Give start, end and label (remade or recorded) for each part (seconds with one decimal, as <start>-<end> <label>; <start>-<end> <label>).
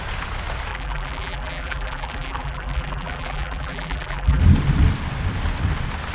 0.0-0.7 recorded; 0.7-4.4 remade; 4.4-6.1 recorded